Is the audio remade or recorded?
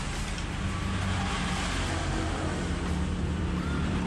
recorded